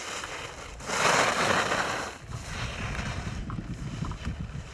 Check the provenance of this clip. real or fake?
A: real